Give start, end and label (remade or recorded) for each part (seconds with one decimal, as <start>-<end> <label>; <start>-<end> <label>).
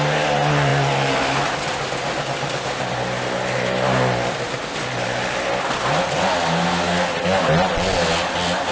0.0-8.7 recorded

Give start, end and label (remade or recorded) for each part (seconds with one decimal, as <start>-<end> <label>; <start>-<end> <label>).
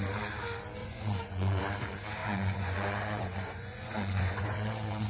0.0-0.8 recorded; 0.8-1.6 remade; 1.6-2.2 recorded; 2.2-5.1 remade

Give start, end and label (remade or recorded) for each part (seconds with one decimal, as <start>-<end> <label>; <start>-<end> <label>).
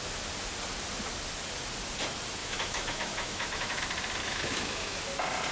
0.0-2.4 recorded; 2.4-3.8 remade; 3.8-4.2 recorded; 4.2-5.0 remade; 5.0-5.5 recorded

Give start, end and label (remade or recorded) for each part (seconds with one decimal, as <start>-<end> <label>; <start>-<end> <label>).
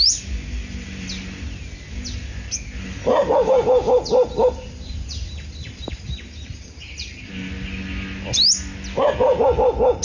0.0-3.1 recorded; 3.1-7.3 remade; 7.3-10.0 recorded